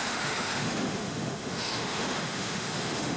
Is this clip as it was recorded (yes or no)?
no